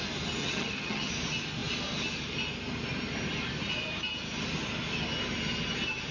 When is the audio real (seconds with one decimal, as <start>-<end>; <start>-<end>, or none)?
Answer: 0.0-0.4; 1.1-6.1